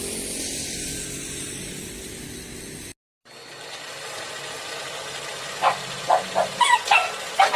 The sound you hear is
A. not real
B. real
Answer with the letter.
B